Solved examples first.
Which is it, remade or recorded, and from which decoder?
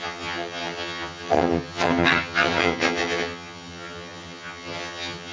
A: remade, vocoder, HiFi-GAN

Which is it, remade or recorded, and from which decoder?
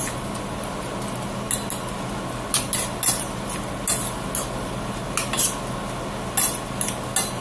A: recorded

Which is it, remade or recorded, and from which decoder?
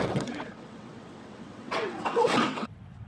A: remade, vocoder, WaveNeXt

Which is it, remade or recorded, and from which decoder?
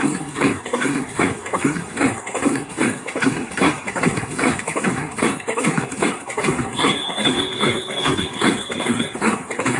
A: remade, codec, SNAC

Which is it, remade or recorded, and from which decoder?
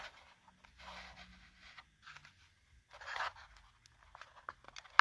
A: recorded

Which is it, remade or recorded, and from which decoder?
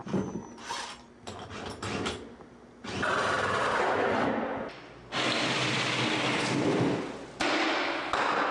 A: recorded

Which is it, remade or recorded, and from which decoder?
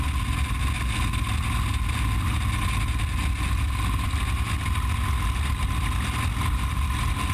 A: recorded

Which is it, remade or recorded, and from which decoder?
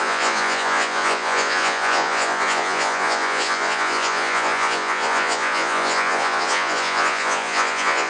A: remade, vocoder, Vocos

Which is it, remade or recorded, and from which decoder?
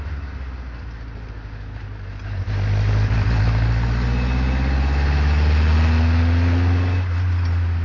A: recorded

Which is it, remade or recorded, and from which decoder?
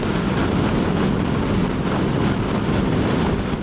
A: recorded